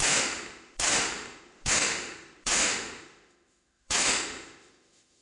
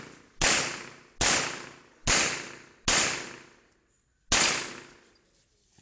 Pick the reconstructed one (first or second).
first